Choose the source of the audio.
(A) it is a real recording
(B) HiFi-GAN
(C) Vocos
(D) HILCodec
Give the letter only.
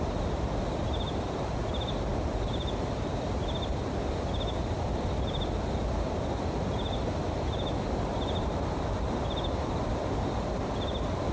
A